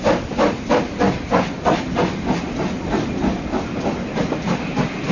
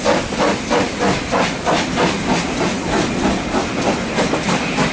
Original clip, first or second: second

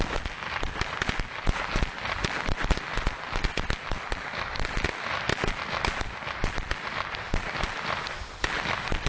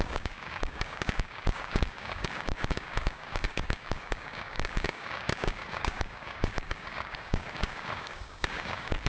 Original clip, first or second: first